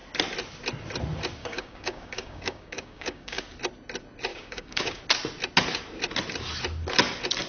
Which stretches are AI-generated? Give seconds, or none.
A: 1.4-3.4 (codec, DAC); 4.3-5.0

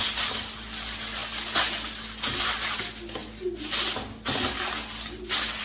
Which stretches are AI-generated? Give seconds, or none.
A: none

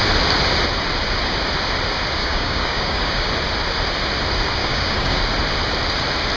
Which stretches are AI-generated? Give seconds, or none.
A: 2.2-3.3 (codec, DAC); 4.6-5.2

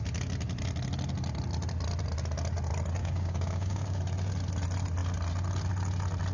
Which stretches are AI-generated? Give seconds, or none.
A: 3.0-4.0 (codec, DAC)

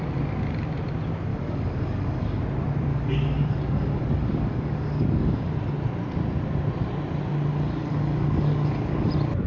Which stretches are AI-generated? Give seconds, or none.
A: 1.3-2.4 (codec, DAC); 2.9-5.5; 7.5-9.1

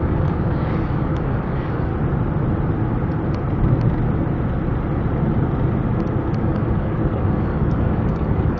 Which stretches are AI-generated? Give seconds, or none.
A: 0.0-1.9 (codec, DAC); 6.4-8.6